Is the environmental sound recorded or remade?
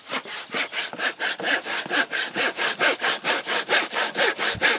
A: recorded